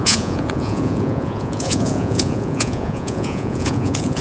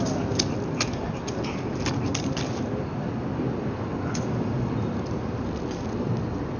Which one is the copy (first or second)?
first